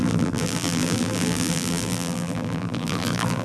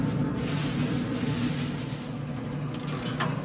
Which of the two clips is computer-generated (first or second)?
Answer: first